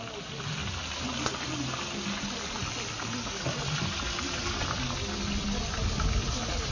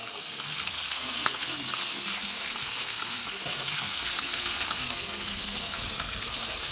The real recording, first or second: first